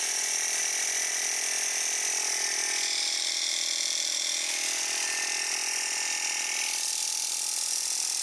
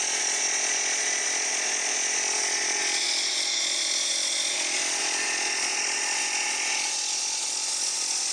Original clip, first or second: first